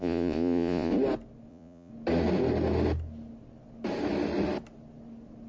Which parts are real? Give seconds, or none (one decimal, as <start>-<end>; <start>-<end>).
0.9-1.5; 1.9-5.5